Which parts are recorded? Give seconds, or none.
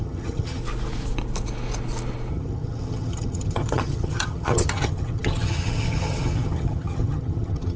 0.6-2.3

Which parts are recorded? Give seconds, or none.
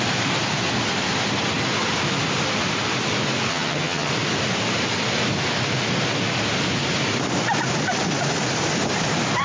0.0-3.5; 4.1-9.4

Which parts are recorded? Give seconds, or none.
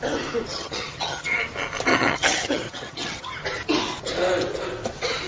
0.0-0.5; 1.4-1.9; 3.3-5.3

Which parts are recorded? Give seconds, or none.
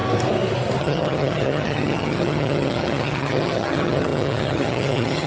0.0-0.8